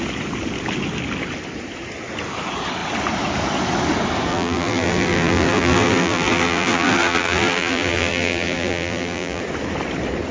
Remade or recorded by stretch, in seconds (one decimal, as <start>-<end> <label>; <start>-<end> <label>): 0.0-4.3 recorded; 4.3-9.4 remade; 9.4-10.3 recorded